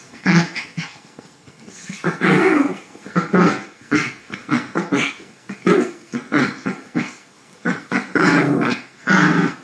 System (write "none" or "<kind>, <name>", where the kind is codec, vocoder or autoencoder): codec, SNAC